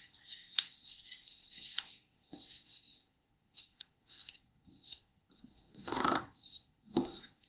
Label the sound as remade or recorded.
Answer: remade